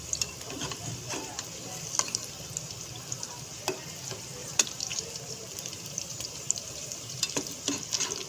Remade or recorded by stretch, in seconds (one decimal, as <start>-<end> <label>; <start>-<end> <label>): 0.0-4.4 recorded; 4.4-7.2 remade; 7.2-8.3 recorded

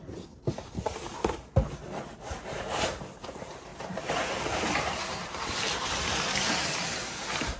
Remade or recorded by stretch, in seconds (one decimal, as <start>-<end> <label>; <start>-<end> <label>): 0.0-0.9 recorded; 0.9-7.6 remade

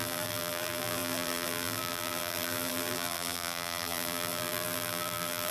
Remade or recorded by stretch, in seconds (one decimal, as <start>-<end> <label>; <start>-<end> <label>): 0.0-5.5 remade

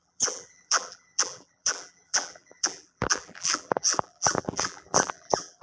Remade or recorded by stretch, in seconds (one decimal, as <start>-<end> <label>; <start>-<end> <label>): 0.0-5.6 remade